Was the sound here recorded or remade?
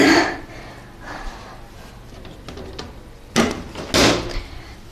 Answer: recorded